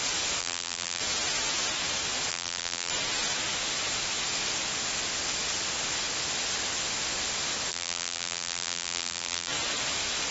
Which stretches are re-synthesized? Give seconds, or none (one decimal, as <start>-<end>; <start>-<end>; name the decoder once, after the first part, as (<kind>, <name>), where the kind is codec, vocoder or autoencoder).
0.4-1.0 (vocoder, BigVGAN v2); 2.3-2.9; 7.7-9.5